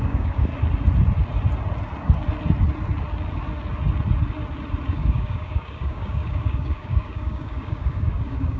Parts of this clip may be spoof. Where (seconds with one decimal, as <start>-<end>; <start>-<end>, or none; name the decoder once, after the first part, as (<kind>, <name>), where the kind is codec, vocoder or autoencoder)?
0.0-0.5 (codec, DAC); 4.9-8.6